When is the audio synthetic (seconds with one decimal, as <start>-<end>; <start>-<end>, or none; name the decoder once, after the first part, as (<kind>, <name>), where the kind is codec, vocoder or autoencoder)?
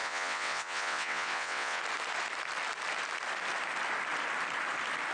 0.0-1.8 (vocoder, WaveNeXt)